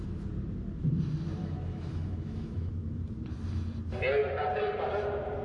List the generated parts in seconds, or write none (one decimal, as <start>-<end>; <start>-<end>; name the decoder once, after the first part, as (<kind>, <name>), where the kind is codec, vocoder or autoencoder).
1.4-2.7 (autoencoder, DAC-VAE)